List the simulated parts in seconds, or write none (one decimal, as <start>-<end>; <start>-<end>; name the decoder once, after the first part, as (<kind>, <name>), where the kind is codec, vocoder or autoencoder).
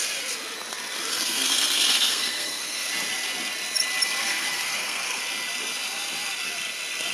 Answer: 1.1-2.9 (codec, SNAC); 4.2-5.2